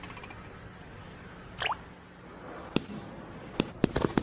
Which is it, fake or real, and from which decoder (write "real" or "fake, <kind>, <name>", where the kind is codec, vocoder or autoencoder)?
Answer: real